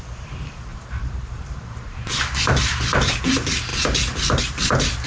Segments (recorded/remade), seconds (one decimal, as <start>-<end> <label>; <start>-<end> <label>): 0.0-0.7 recorded; 0.7-3.1 remade; 3.1-5.1 recorded